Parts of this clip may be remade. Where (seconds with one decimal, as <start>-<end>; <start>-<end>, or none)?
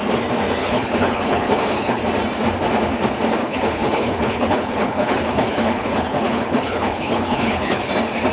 0.6-2.0; 3.4-7.9